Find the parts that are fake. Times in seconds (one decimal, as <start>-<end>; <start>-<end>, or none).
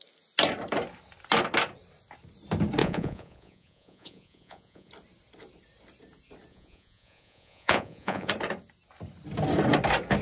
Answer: 2.8-4.9; 6.5-8.3